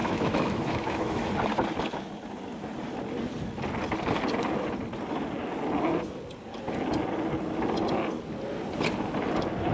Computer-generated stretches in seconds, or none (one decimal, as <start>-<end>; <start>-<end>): 0.0-1.3